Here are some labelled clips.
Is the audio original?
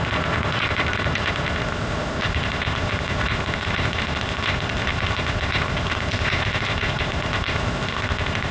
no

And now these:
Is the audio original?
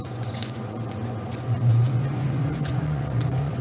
no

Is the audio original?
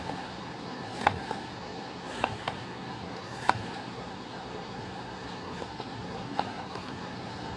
no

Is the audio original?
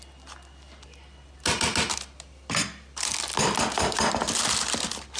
yes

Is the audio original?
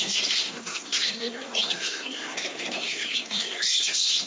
no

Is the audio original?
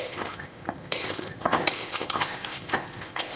no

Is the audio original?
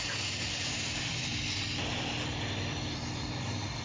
yes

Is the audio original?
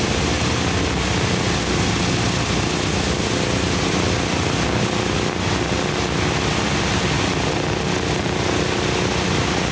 yes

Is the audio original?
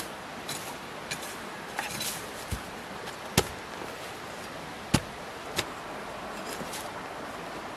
yes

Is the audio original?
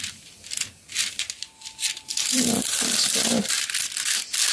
no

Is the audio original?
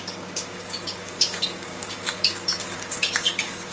no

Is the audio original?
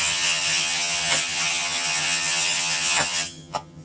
no